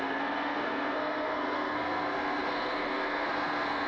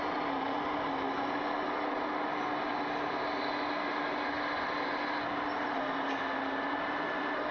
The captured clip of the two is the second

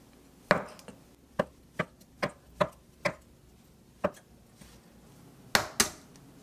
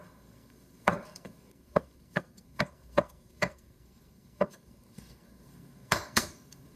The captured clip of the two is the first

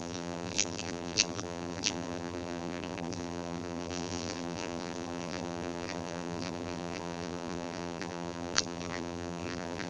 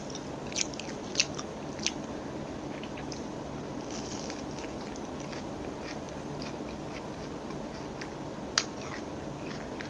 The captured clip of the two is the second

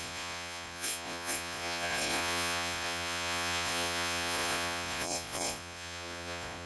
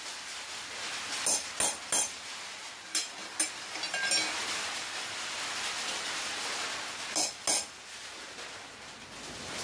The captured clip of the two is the second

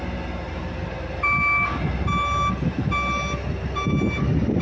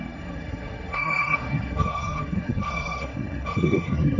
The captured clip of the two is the first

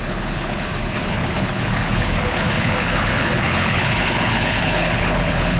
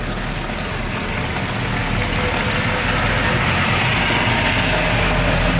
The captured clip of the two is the second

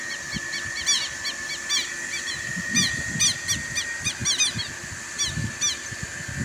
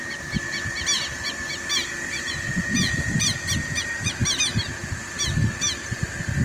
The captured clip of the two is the first